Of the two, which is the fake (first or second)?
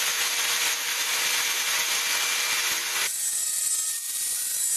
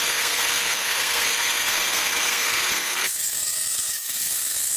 second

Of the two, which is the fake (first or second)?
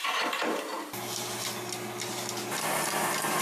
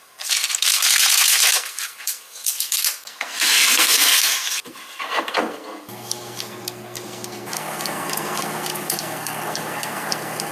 second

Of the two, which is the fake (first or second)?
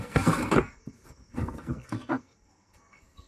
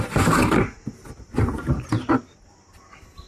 first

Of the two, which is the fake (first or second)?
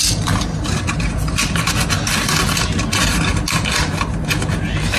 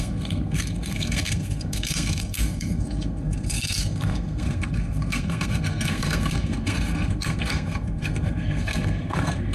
second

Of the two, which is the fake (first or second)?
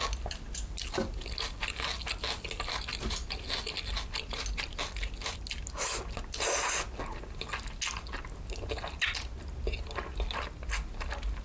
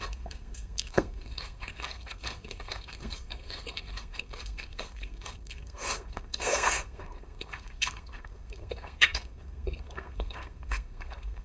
second